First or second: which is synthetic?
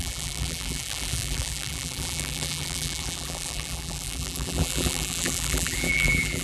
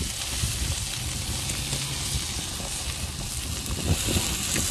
first